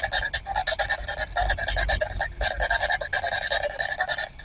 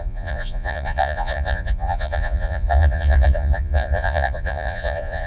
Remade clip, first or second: second